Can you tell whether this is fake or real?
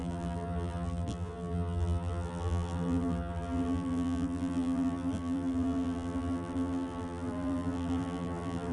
fake